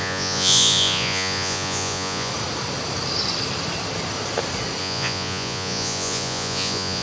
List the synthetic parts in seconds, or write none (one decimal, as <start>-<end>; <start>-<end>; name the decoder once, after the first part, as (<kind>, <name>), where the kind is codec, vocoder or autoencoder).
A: 0.0-2.3 (vocoder, Vocos); 4.8-7.0